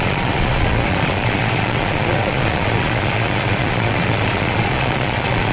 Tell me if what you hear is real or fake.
fake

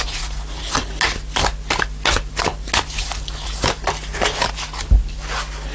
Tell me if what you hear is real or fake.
real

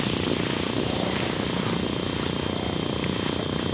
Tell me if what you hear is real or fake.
real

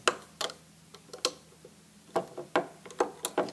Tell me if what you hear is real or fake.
real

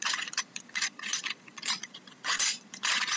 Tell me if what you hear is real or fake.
fake